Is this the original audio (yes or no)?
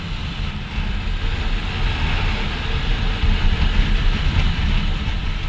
yes